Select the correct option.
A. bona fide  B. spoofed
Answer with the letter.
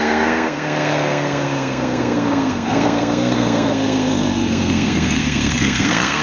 B